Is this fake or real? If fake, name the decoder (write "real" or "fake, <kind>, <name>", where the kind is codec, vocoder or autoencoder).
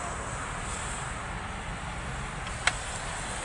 real